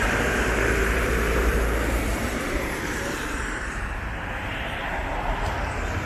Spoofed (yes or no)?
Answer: yes